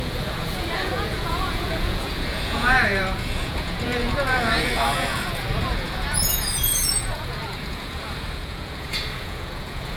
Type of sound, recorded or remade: remade